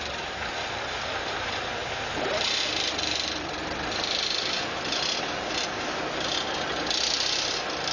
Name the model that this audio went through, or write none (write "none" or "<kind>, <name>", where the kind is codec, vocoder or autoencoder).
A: vocoder, BigVGAN v2